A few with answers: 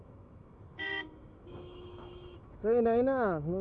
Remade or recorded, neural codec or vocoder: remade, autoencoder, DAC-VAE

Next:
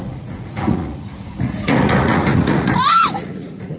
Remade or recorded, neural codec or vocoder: remade, vocoder, Vocos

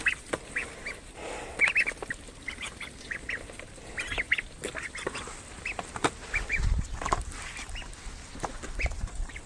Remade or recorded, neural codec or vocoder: recorded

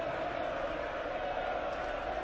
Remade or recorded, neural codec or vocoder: recorded